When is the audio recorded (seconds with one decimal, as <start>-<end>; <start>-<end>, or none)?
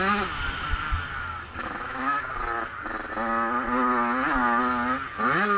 0.0-1.6; 2.2-5.6